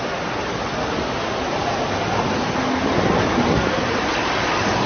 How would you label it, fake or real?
real